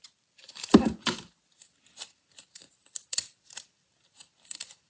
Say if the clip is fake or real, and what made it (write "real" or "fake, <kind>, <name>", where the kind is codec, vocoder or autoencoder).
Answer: fake, vocoder, BigVGAN v2